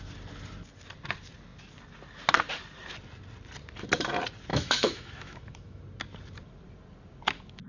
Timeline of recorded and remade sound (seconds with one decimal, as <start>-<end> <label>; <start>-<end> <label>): 0.0-4.5 recorded; 4.5-5.8 remade; 5.8-7.7 recorded

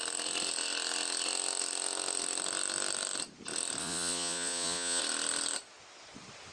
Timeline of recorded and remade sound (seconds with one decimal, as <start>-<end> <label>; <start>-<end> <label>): 0.0-3.8 recorded; 3.8-5.0 remade; 5.0-6.5 recorded